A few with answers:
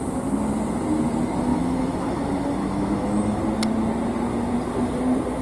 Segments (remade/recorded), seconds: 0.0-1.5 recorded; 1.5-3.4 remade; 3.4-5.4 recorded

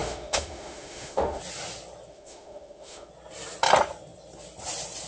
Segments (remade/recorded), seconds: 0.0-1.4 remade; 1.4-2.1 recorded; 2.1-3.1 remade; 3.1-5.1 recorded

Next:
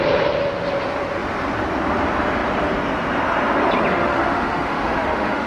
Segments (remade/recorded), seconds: 0.0-3.9 recorded; 3.9-5.5 remade

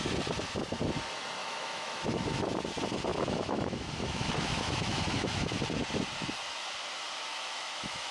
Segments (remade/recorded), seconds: 0.0-1.4 recorded; 1.4-2.4 remade; 2.4-3.1 recorded; 3.1-5.5 remade; 5.5-7.3 recorded; 7.3-8.1 remade

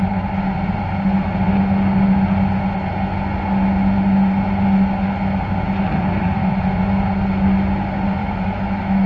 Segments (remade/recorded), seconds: 0.0-8.2 recorded; 8.2-9.1 remade

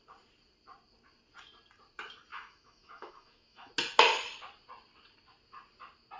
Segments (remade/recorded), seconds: 0.0-2.3 recorded; 2.3-3.7 remade; 3.7-6.2 recorded

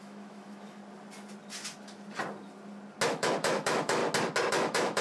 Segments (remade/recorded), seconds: 0.0-0.8 remade; 0.8-3.1 recorded; 3.1-4.0 remade; 4.0-4.5 recorded; 4.5-5.0 remade

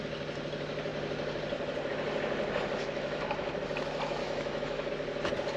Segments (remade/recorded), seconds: 0.0-2.8 recorded; 2.8-3.5 remade; 3.5-4.2 recorded; 4.2-4.9 remade; 4.9-5.6 recorded